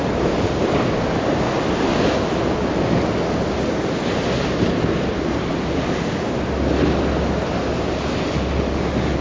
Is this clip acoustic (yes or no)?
yes